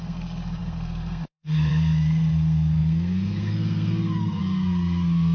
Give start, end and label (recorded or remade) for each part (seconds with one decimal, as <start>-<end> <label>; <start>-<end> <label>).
0.0-5.3 remade